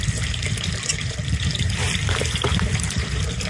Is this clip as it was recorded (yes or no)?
no